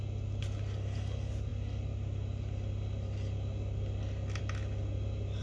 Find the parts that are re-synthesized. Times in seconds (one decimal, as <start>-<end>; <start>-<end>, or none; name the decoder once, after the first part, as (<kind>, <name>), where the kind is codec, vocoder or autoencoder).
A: none